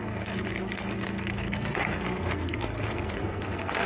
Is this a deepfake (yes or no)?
yes